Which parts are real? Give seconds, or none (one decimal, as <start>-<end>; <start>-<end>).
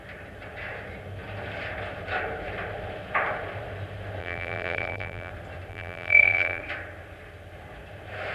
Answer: 0.0-4.2; 5.3-5.7; 6.6-8.3